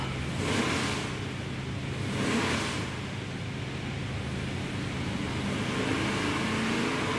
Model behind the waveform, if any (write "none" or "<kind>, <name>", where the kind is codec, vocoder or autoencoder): none